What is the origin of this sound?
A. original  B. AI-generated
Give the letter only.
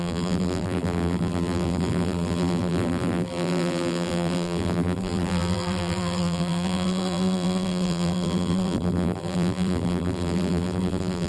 B